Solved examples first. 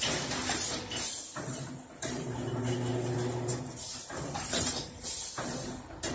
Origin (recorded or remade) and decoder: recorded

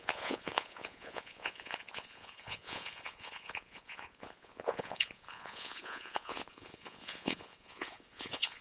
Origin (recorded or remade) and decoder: remade, vocoder, Vocos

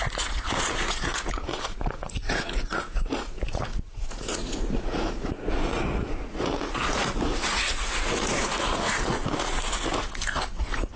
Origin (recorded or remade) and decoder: remade, vocoder, Vocos